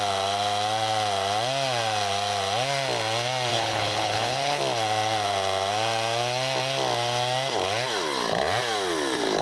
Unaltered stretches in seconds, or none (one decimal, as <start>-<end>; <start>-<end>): 0.0-3.5; 4.6-9.4